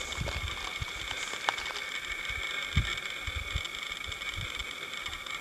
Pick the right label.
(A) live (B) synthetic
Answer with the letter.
A